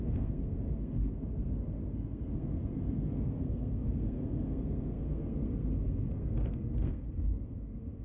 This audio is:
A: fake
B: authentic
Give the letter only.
A